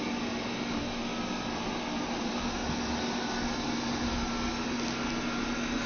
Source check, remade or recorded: recorded